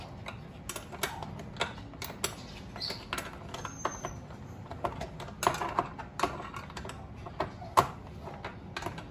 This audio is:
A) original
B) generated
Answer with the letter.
A